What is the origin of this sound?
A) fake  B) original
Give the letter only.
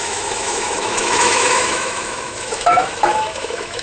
A